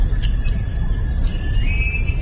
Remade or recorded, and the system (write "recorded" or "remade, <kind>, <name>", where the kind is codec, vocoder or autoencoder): recorded